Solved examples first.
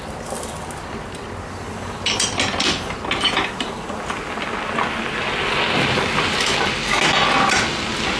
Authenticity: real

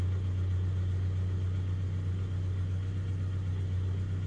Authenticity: real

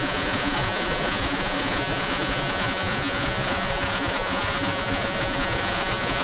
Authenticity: fake